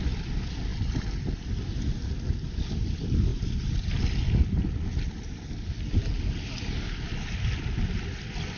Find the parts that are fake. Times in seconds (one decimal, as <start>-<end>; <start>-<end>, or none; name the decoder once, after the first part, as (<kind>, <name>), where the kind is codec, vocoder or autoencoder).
3.3-3.9 (vocoder, BigVGAN v2)